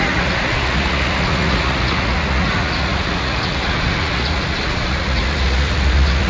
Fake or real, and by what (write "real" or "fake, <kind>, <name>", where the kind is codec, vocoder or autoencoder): fake, vocoder, Vocos